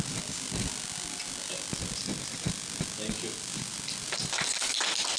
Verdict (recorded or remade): recorded